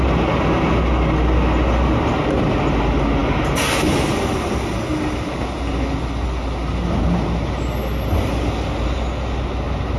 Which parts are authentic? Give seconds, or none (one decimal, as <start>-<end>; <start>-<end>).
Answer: 0.0-10.0